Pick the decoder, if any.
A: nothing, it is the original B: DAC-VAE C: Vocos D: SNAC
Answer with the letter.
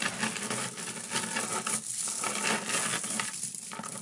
A